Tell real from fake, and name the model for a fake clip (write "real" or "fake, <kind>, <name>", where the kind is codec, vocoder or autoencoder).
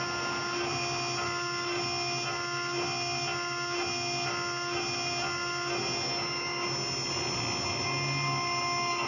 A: real